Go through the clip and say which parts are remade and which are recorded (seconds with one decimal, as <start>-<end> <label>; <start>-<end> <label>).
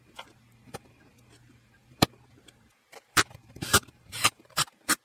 0.0-5.0 remade